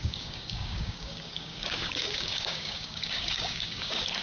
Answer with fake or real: fake